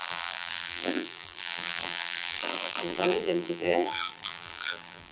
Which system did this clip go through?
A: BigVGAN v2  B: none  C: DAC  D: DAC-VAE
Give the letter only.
A